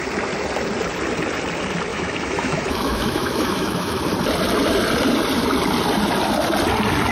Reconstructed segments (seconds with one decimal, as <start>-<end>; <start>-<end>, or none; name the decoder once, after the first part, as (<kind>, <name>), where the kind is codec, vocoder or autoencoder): 1.9-4.0 (autoencoder, DAC-VAE)